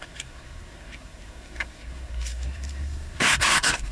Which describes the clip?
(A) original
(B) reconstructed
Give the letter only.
B